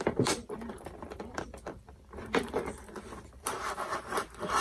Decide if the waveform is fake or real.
fake